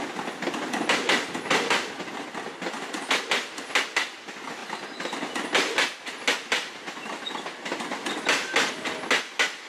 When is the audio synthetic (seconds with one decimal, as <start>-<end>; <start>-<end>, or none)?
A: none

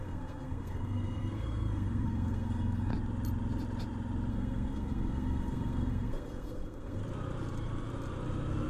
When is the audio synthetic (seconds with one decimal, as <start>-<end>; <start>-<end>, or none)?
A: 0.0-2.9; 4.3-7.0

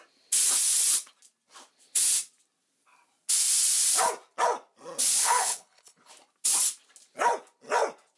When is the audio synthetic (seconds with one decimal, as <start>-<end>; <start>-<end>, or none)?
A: 5.2-6.1

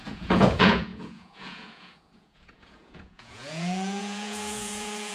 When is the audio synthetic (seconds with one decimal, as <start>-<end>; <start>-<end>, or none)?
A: 0.0-5.1

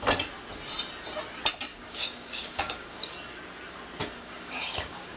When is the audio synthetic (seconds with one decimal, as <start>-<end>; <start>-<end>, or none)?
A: 1.7-3.1; 4.0-5.2

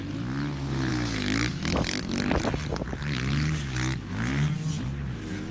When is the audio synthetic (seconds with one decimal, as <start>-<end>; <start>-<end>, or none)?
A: 0.9-2.0

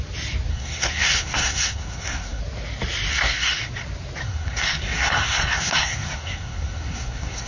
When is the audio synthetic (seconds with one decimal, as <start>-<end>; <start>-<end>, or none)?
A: 0.5-2.4; 3.1-3.7; 4.2-7.5